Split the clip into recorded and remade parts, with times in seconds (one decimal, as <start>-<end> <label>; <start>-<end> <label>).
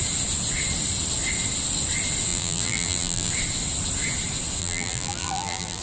0.0-2.3 recorded; 2.3-3.3 remade; 3.3-4.6 recorded; 4.6-5.8 remade